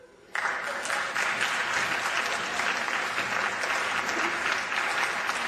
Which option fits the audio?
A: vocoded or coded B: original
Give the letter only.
B